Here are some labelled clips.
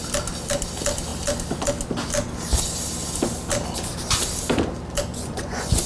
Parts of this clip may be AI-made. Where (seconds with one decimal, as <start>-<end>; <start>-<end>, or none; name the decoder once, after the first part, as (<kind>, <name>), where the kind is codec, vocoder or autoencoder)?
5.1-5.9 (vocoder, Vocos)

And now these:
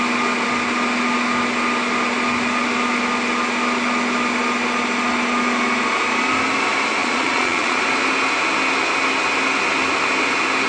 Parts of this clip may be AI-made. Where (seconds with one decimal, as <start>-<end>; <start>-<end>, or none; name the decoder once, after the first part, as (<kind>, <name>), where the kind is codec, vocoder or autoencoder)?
7.0-7.8 (vocoder, Vocos)

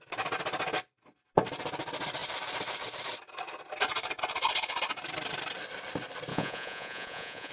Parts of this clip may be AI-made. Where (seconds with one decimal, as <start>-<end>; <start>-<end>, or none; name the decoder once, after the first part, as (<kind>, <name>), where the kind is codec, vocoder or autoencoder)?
6.3-7.5 (vocoder, Vocos)